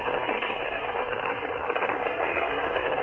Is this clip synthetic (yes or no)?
yes